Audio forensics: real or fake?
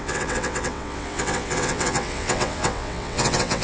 fake